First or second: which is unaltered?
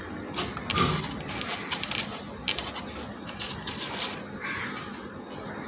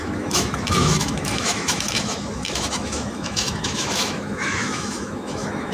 first